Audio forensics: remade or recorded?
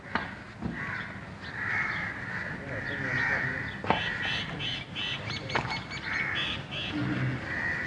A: recorded